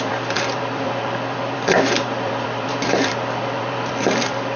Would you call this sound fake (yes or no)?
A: yes